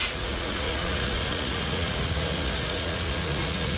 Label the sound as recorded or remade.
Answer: remade